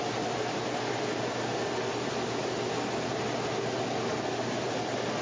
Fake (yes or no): no